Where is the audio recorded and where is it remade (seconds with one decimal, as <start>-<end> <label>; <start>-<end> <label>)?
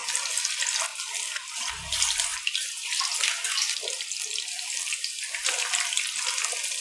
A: 0.0-6.8 recorded